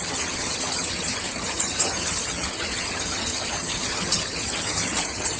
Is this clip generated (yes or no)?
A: yes